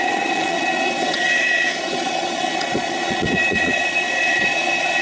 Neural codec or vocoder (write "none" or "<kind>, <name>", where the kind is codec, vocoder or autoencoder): vocoder, Vocos